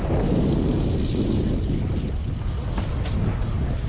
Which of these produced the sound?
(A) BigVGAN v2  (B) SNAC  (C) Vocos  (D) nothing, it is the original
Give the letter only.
D